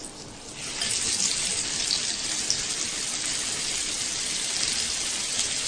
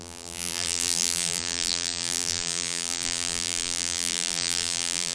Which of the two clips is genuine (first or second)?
first